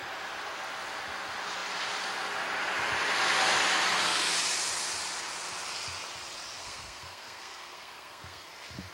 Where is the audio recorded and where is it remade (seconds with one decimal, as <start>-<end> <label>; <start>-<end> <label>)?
0.0-6.6 recorded; 6.6-8.5 remade; 8.5-8.9 recorded